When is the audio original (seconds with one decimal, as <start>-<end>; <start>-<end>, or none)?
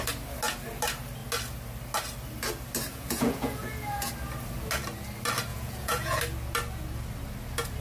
0.0-2.9; 4.1-5.5; 6.2-7.8